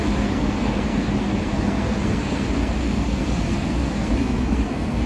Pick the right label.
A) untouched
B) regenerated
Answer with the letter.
B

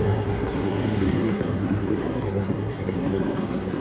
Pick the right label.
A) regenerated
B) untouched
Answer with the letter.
A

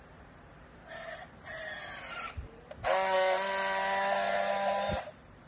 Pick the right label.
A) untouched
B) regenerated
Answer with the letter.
A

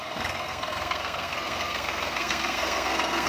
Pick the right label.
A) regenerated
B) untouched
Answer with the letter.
A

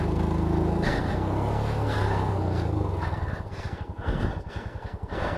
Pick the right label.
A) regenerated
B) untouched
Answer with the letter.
A